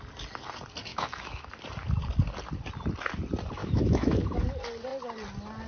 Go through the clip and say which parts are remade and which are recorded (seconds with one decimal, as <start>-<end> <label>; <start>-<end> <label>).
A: 0.0-0.9 recorded; 0.9-1.5 remade; 1.5-3.6 recorded; 3.6-4.3 remade; 4.3-5.7 recorded